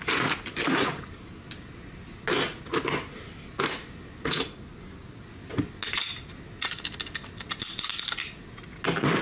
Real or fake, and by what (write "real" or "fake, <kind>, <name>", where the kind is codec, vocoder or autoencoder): real